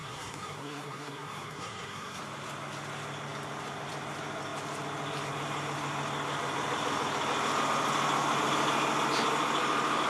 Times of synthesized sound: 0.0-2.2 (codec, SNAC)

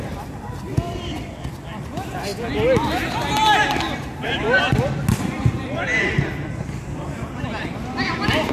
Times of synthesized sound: none

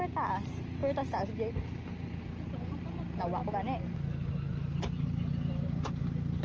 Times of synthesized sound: none

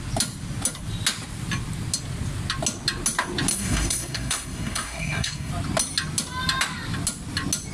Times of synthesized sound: 3.5-5.5 (codec, SNAC)

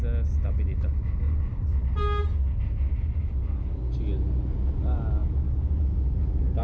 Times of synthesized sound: none

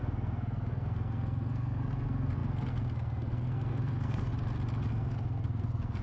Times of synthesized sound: 0.0-4.3 (codec, SNAC); 4.9-6.0

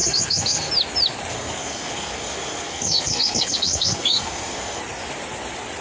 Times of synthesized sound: 0.0-0.7 (codec, SNAC); 1.3-4.8